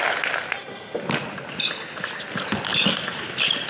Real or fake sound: real